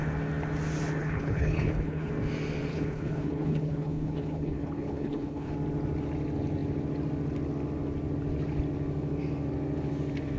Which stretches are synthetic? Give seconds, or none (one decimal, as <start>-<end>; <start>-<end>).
1.0-2.1; 2.7-5.5

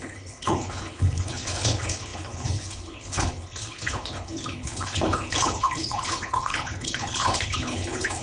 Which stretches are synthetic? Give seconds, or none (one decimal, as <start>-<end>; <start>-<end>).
0.0-8.2

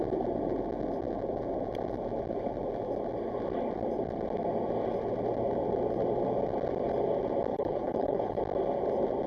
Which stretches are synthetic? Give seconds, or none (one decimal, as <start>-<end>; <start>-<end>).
7.5-8.4

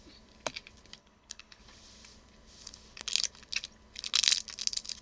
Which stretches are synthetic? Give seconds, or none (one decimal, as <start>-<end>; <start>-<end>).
1.0-1.6

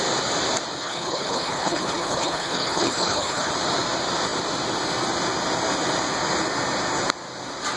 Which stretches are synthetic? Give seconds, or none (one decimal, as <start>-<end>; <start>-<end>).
0.8-3.5